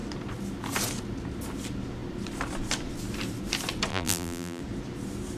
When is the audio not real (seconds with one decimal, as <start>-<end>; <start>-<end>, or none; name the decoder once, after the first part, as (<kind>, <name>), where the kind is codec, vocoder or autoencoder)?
3.9-4.6 (vocoder, BigVGAN v2)